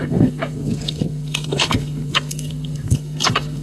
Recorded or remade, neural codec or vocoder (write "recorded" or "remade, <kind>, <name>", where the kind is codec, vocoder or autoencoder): remade, codec, SNAC